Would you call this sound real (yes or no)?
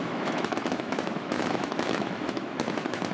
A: no